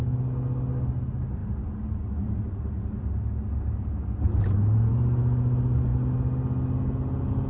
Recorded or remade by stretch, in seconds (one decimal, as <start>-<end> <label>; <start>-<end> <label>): 0.0-7.5 recorded